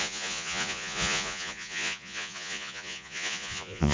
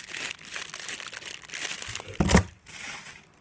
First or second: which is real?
second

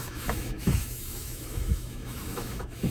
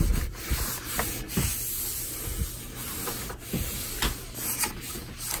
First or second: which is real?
second